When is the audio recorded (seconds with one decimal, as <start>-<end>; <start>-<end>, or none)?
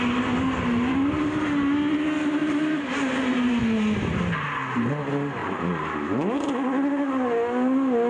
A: 0.0-2.4; 3.6-5.4; 6.5-8.1